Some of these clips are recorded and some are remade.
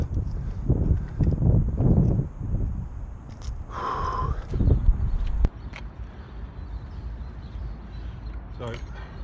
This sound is recorded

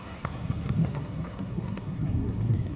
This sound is remade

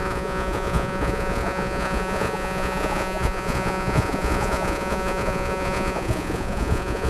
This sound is remade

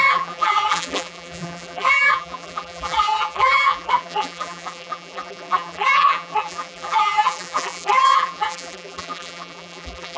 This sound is remade